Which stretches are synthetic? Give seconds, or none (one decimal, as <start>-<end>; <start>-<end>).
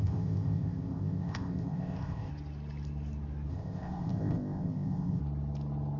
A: 0.0-2.3; 3.5-5.2